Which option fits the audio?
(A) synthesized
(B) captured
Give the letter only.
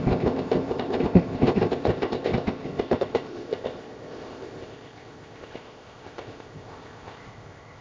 A